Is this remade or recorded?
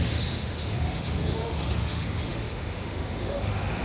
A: remade